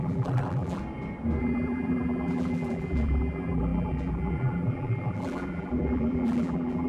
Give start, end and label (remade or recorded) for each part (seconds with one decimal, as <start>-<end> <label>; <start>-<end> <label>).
0.0-0.8 remade; 0.8-1.4 recorded; 1.4-6.9 remade